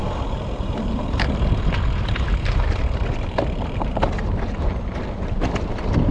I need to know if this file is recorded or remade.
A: remade